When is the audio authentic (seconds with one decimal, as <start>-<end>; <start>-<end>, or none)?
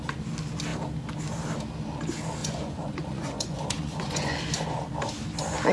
0.0-2.4; 4.4-5.7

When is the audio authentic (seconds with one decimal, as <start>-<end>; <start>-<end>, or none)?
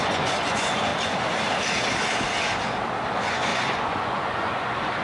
0.9-3.1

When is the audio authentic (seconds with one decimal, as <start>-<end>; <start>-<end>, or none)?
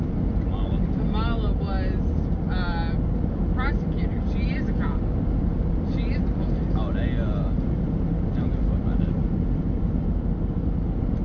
0.0-11.2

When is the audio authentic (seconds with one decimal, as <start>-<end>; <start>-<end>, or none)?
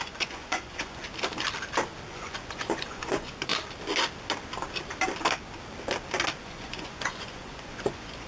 1.0-2.1; 3.5-6.4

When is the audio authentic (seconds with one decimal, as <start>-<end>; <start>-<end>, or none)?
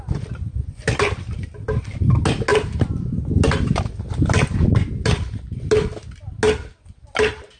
0.0-7.6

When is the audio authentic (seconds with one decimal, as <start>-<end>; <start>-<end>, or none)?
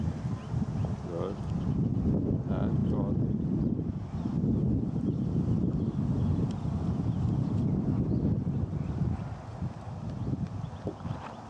0.0-11.5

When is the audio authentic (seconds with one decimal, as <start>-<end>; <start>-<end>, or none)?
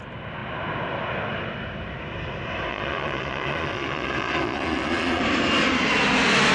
0.0-2.7; 5.2-6.5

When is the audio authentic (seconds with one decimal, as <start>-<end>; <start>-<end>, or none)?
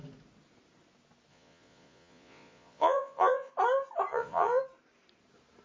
0.0-1.3; 3.5-4.1; 4.6-5.6